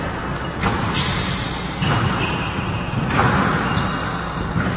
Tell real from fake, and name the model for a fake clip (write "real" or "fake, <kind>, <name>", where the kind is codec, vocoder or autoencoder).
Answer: fake, vocoder, BigVGAN v2